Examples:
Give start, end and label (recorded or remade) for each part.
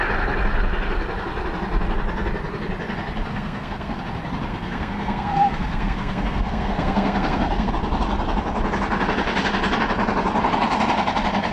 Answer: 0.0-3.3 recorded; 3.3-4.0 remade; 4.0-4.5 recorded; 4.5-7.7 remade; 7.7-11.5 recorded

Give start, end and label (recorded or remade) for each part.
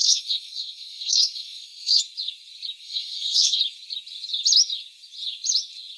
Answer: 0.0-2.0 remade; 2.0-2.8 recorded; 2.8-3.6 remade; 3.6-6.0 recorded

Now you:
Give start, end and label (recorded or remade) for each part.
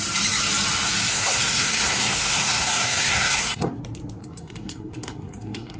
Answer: 0.0-1.1 recorded; 1.1-3.8 remade; 3.8-4.2 recorded; 4.2-5.8 remade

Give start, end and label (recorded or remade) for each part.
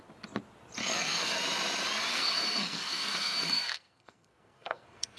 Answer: 0.0-0.8 recorded; 0.8-1.4 remade; 1.4-2.1 recorded; 2.1-5.2 remade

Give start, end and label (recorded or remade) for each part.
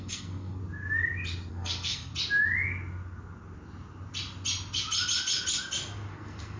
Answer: 0.0-0.6 remade; 0.6-1.5 recorded; 1.5-2.1 remade; 2.1-6.1 recorded; 6.1-6.6 remade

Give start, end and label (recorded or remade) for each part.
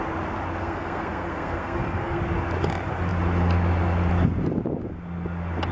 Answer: 0.0-0.6 recorded; 0.6-2.2 remade; 2.2-5.7 recorded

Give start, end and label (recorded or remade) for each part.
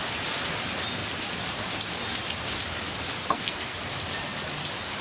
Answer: 0.0-3.2 recorded; 3.2-3.8 remade; 3.8-5.0 recorded